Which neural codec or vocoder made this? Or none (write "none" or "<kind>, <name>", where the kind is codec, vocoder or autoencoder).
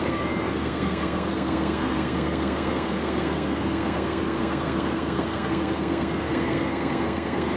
codec, SNAC